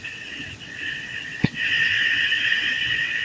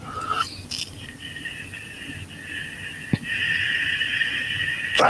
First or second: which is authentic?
second